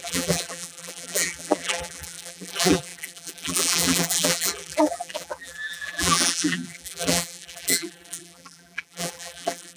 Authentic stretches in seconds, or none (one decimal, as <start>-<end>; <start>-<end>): none